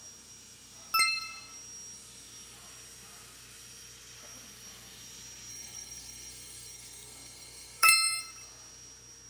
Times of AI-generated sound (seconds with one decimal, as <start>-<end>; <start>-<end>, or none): 5.5-8.2